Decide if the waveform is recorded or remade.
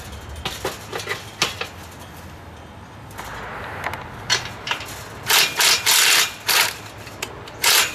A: recorded